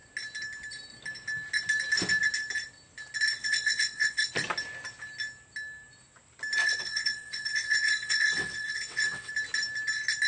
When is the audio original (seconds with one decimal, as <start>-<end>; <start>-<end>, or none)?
0.0-3.4; 4.3-6.6; 9.3-10.3